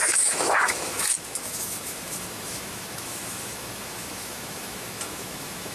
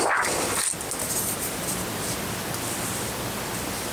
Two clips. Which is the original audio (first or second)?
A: second